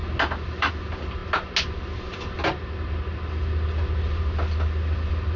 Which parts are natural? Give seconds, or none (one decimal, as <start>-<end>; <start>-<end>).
0.0-5.4

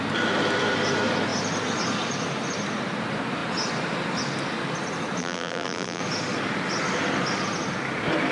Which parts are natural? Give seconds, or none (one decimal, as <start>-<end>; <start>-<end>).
0.0-5.2; 6.0-8.3

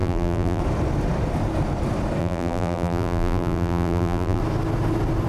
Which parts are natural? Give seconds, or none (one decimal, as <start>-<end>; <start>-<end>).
0.6-2.2; 4.4-5.3

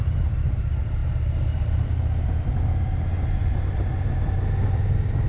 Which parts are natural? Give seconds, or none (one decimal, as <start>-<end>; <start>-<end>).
0.0-5.3

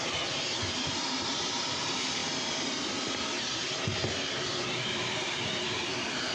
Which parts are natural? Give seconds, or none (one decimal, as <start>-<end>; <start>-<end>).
none